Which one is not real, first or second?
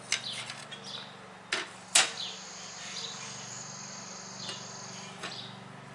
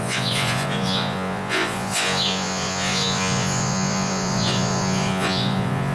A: second